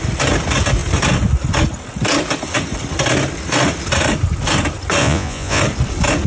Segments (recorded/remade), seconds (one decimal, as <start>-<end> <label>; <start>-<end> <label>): 0.0-5.0 recorded; 5.0-5.6 remade; 5.6-6.3 recorded